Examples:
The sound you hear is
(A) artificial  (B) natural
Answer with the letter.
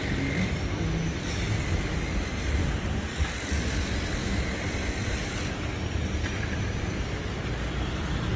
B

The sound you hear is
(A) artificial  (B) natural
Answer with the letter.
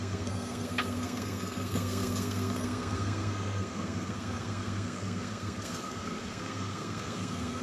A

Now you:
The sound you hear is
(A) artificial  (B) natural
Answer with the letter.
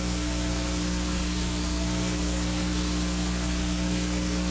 A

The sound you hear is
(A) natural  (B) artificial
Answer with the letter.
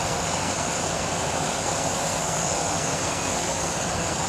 B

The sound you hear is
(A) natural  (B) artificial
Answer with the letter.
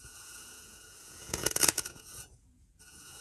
B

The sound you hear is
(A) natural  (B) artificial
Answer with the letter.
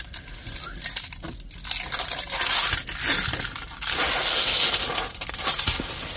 B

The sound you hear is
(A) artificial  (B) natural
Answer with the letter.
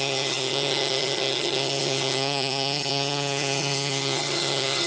A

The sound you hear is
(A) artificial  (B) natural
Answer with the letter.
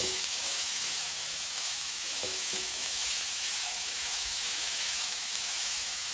A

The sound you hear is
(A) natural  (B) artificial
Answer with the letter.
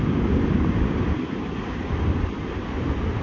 A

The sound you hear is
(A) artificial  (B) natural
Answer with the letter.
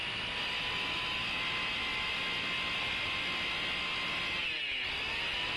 B